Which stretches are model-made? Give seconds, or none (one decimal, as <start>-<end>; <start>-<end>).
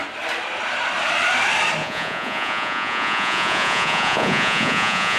1.8-5.2